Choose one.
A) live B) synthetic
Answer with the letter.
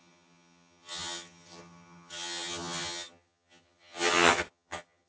B